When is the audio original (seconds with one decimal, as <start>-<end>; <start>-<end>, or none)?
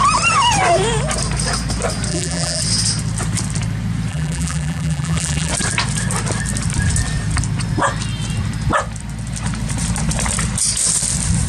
0.0-2.1; 2.6-4.1; 5.5-11.5